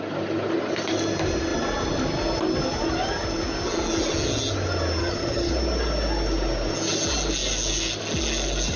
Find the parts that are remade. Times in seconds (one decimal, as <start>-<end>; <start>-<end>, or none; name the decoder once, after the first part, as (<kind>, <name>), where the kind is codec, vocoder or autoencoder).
5.0-5.5 (vocoder, HiFi-GAN)